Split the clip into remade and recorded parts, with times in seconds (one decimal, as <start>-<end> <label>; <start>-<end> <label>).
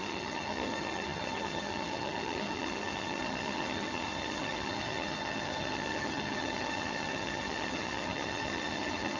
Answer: 0.0-9.2 remade